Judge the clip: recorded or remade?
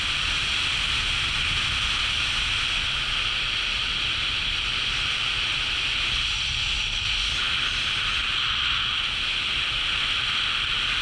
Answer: recorded